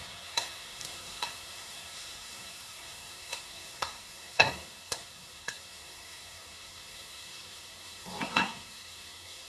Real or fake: fake